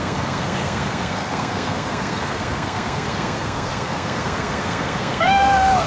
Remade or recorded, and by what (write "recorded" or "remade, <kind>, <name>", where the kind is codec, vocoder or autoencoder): remade, codec, SNAC